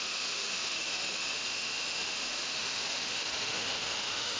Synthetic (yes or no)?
yes